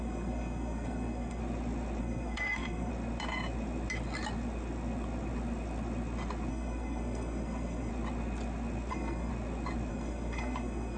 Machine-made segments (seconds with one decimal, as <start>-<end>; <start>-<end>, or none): 0.0-1.4; 2.0-2.9; 6.5-7.9; 8.9-9.3; 9.9-11.0